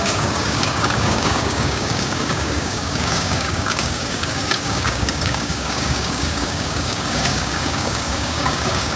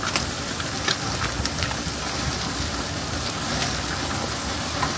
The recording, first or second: second